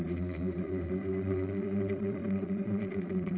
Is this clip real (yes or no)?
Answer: no